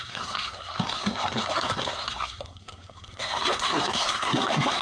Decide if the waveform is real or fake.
fake